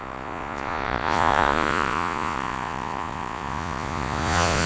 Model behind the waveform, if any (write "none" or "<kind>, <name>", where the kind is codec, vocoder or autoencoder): vocoder, Vocos